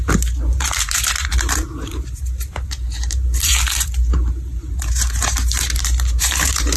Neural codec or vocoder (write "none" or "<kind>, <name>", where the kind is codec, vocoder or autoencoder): vocoder, BigVGAN v2